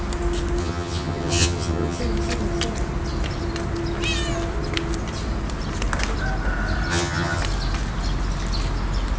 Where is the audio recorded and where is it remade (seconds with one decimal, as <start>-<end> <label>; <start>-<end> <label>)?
0.0-0.6 recorded; 0.6-2.0 remade; 2.0-6.9 recorded; 6.9-7.4 remade; 7.4-9.2 recorded